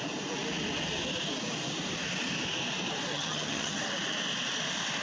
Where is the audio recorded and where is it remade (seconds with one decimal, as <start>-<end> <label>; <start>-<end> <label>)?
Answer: 0.0-3.1 recorded; 3.1-3.8 remade; 3.8-5.0 recorded